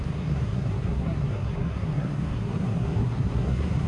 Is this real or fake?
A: fake